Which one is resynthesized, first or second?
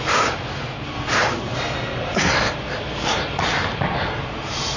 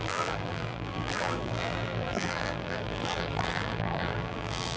second